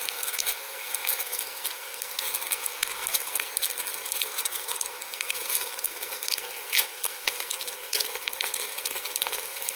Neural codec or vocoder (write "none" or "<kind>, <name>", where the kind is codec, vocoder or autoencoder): codec, SNAC